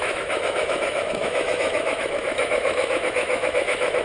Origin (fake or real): fake